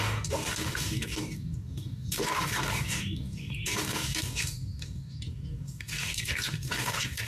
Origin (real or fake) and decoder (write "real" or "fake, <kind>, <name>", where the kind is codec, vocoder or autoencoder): fake, codec, DAC